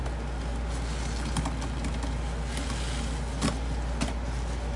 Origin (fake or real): real